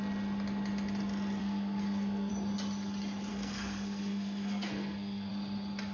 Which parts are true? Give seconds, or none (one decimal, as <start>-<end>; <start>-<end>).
0.0-1.4; 2.3-3.3; 5.3-5.9